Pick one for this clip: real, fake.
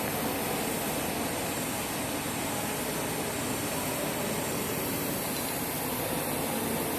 real